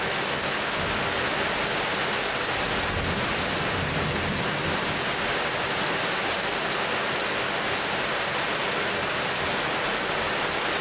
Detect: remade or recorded recorded